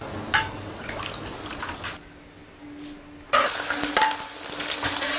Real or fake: real